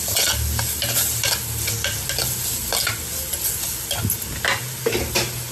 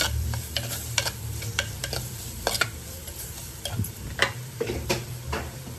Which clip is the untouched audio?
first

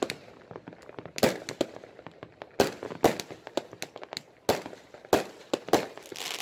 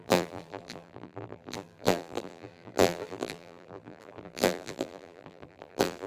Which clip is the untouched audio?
first